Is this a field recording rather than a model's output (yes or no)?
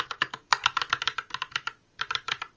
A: yes